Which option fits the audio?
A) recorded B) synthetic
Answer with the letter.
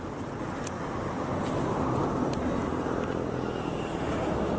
A